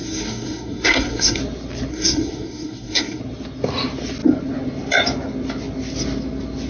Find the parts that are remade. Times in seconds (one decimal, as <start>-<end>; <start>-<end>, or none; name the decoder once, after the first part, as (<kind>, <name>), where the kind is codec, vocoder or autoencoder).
0.0-1.4 (codec, SNAC); 1.9-3.2